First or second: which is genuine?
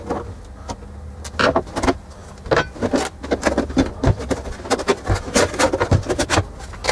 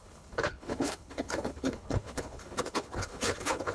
first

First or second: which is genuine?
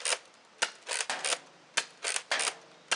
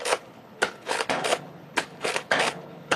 first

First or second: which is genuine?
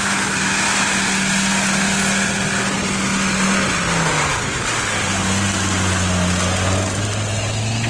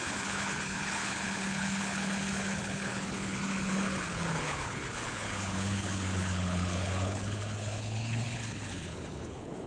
first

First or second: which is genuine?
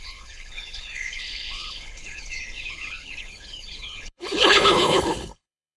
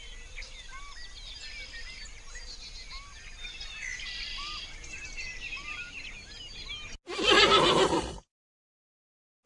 second